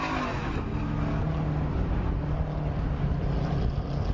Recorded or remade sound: recorded